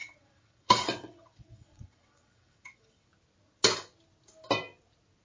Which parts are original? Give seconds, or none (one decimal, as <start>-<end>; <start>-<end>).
3.1-5.2